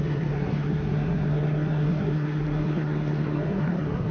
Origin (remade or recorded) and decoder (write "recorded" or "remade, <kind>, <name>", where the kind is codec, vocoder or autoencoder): remade, codec, SNAC